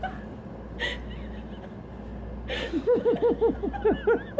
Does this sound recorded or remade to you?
recorded